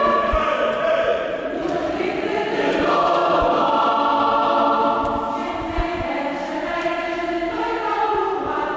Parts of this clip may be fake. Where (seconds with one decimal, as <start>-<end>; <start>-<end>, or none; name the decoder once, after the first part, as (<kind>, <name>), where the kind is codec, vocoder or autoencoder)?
1.1-2.5 (vocoder, Vocos)